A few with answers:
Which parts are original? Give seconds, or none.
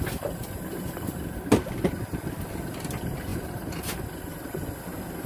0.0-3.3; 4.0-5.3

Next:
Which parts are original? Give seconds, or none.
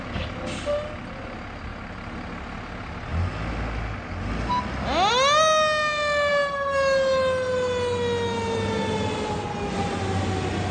0.0-10.7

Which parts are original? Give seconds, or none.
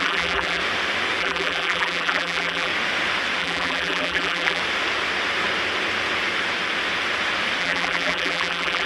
0.6-1.2; 2.7-3.4; 4.6-7.6